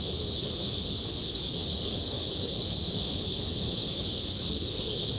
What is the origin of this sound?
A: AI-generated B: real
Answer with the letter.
A